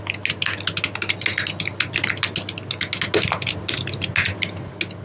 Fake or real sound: real